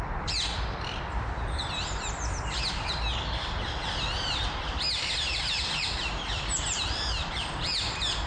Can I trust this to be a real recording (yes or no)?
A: no